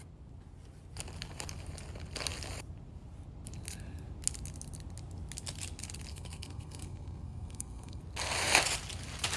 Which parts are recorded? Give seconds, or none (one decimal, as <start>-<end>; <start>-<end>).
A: 0.0-6.1; 8.0-9.4